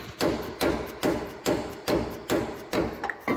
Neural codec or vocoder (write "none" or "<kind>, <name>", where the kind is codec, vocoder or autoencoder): none